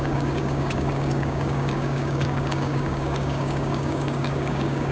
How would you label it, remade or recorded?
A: remade